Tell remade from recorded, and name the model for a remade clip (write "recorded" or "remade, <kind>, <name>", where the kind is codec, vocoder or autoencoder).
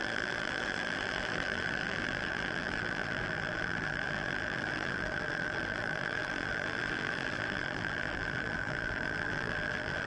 remade, vocoder, BigVGAN v2